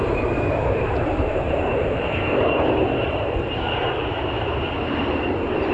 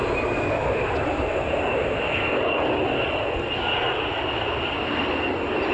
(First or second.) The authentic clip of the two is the second